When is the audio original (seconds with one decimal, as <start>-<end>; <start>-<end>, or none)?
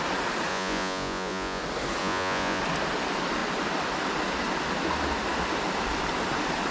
0.0-0.5; 1.6-2.0; 2.6-6.7